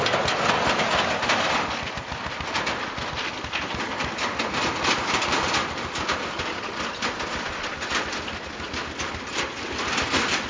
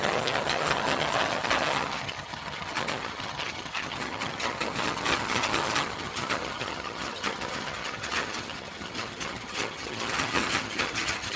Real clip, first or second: first